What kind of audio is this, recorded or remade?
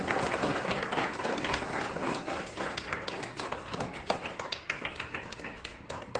remade